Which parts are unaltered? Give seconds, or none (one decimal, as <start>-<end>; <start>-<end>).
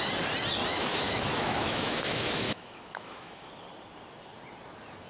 0.0-0.7; 3.5-5.1